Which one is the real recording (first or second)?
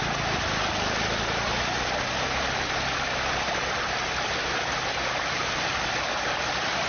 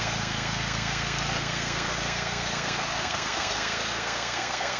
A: first